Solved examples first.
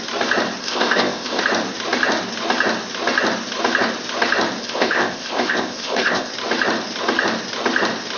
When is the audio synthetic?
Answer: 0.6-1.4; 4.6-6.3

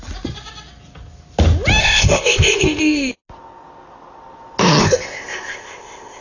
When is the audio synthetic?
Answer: 1.8-3.1; 4.8-6.2

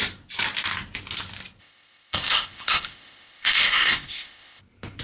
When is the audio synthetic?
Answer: 1.6-4.6

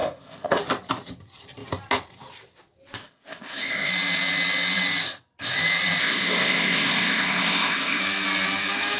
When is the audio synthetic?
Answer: 0.0-0.6; 3.0-3.9; 6.0-8.0

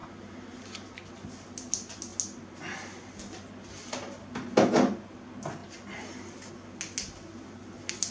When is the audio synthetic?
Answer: none

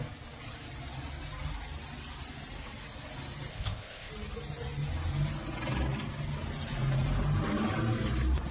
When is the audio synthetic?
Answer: 3.5-4.1

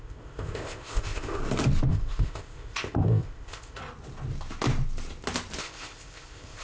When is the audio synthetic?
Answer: 0.0-1.4; 1.9-3.8; 5.6-6.6